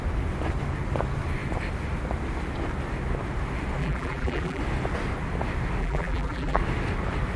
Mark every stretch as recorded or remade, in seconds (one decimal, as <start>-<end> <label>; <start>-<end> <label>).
0.0-3.8 recorded; 3.8-4.6 remade; 4.6-5.8 recorded; 5.8-6.6 remade; 6.6-7.4 recorded